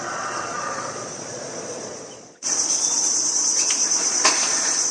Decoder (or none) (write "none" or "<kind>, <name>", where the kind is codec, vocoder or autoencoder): vocoder, Vocos